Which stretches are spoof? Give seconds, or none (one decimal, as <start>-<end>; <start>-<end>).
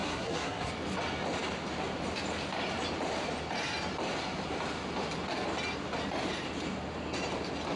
0.0-0.7